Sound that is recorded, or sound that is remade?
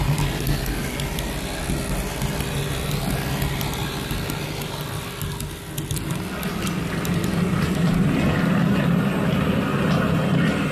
recorded